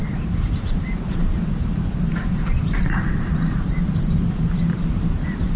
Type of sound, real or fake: fake